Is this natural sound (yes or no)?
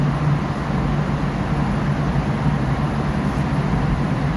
yes